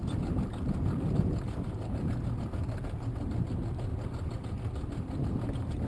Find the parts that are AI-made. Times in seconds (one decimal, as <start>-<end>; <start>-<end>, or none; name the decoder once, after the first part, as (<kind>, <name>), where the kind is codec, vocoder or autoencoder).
none

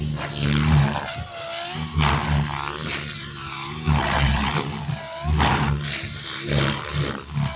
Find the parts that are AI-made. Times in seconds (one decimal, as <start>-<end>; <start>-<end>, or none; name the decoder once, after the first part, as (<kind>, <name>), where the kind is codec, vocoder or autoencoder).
4.0-4.5 (vocoder, WaveNeXt)

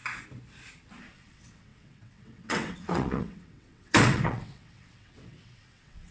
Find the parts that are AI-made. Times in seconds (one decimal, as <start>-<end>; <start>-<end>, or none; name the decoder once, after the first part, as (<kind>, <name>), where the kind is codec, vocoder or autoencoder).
1.0-6.1 (vocoder, WaveNeXt)

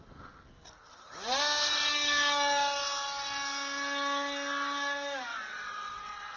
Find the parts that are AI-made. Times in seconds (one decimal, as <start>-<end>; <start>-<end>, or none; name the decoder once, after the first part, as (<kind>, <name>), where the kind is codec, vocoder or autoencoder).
5.3-6.4 (vocoder, WaveNeXt)

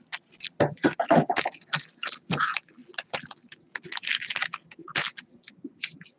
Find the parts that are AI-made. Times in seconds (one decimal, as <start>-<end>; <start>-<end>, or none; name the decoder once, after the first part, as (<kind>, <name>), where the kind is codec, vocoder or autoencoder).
none

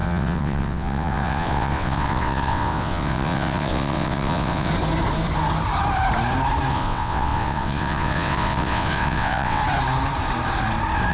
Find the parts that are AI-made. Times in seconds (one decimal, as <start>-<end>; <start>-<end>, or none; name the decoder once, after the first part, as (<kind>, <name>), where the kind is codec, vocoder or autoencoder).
0.0-4.7 (vocoder, WaveNeXt); 6.7-9.6